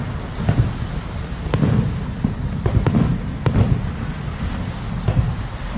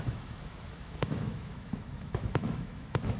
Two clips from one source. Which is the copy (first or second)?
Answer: second